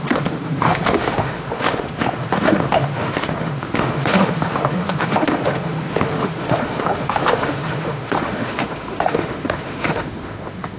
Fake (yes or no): yes